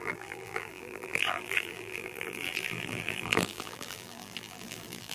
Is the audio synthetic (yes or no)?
yes